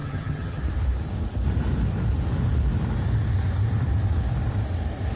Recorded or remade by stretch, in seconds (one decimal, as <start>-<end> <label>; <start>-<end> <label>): 0.0-0.6 remade; 0.6-5.2 recorded